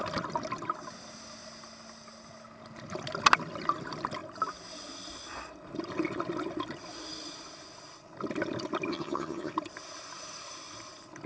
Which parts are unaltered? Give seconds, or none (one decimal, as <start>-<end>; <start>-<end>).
0.0-8.9; 9.5-11.3